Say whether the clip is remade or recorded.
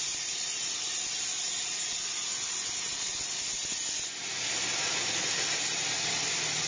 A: recorded